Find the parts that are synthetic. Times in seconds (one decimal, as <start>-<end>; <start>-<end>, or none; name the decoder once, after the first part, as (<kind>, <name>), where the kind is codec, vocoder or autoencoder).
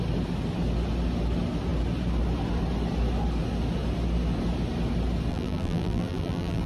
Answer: 5.3-6.7 (vocoder, BigVGAN v2)